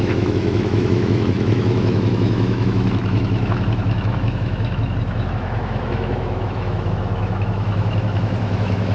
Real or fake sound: fake